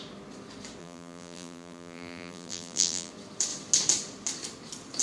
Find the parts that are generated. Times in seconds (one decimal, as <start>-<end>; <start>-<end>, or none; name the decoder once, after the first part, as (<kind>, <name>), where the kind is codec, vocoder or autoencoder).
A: 0.8-3.1 (vocoder, BigVGAN v2)